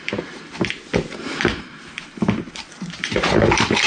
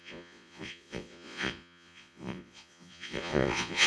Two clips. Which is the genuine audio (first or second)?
first